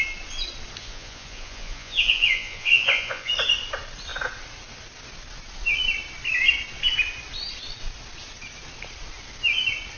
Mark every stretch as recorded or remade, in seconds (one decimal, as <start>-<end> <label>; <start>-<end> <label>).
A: 0.0-0.8 recorded; 0.8-3.3 remade; 3.3-10.0 recorded